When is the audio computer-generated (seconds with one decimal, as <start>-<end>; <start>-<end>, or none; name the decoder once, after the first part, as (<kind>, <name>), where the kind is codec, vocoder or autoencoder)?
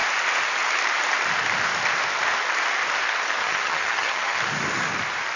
3.4-4.4 (vocoder, HiFi-GAN)